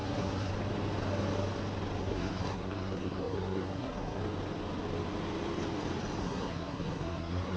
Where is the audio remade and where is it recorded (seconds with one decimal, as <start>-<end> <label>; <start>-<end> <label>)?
0.0-0.5 remade; 0.5-2.0 recorded; 2.0-4.2 remade; 4.2-6.2 recorded; 6.2-7.6 remade